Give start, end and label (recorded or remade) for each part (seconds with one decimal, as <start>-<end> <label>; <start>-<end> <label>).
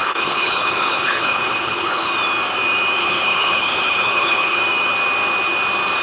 0.0-2.1 remade; 2.1-3.0 recorded; 3.0-4.6 remade; 4.6-6.0 recorded